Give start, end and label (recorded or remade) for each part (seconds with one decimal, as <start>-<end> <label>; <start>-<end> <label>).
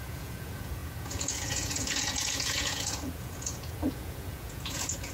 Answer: 0.0-5.1 remade